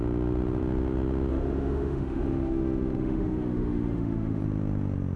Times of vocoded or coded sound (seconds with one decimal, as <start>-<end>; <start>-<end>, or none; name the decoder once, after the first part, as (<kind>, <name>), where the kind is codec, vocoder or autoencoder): 1.3-4.4 (autoencoder, DAC-VAE)